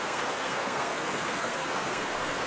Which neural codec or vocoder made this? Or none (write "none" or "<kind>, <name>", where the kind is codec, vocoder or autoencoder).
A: codec, SNAC